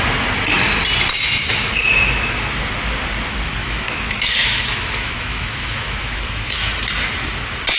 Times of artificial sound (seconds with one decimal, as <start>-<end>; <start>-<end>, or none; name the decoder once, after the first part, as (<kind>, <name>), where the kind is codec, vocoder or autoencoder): 3.6-6.7 (autoencoder, DAC-VAE)